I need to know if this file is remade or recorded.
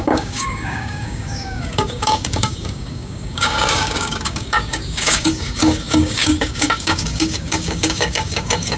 remade